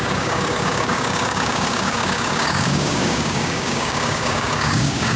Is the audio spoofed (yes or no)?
yes